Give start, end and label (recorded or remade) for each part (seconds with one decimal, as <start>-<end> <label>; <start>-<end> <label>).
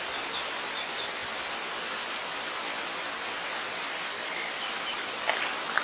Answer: 0.0-5.8 recorded